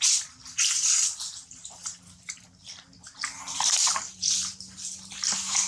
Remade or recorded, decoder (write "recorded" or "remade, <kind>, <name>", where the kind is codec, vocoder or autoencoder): recorded